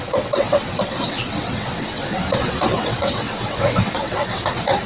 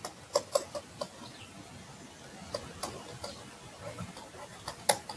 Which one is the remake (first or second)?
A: first